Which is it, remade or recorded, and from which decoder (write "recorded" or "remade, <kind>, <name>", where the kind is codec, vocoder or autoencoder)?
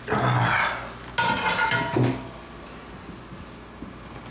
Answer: recorded